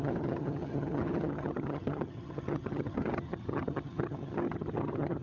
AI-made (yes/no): yes